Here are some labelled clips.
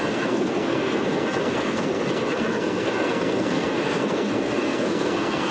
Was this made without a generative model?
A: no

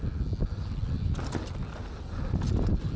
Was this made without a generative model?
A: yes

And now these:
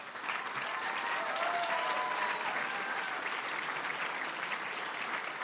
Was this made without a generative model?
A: yes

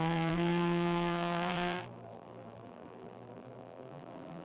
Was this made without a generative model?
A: no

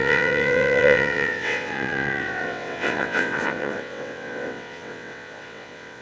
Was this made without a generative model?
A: no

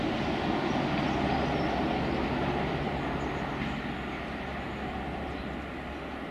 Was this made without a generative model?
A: yes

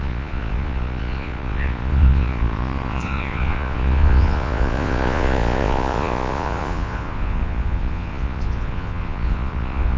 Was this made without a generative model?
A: no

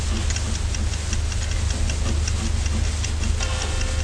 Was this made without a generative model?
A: yes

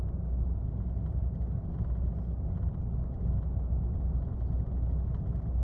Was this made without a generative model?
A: yes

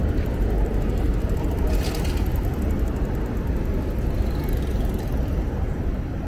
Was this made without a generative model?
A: yes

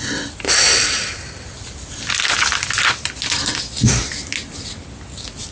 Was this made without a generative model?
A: yes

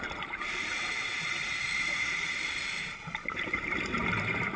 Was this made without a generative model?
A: no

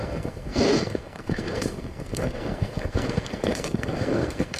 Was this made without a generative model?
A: no